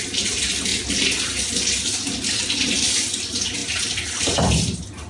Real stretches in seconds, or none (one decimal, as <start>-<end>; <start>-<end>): 0.0-5.1